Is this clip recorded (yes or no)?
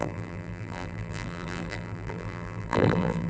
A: no